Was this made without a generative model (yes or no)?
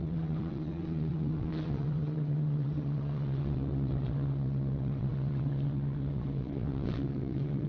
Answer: no